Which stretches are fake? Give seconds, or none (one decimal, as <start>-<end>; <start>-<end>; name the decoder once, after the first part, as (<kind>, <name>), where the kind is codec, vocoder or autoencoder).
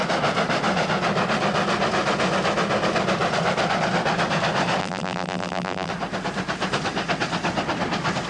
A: 4.8-5.9 (vocoder, BigVGAN v2)